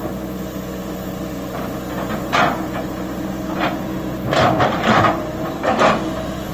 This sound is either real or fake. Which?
real